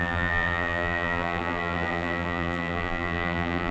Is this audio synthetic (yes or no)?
yes